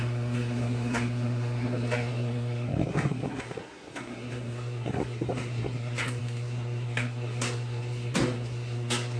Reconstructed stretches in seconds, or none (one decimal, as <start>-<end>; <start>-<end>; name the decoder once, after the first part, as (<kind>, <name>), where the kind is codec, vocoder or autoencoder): 0.0-9.2 (codec, SNAC)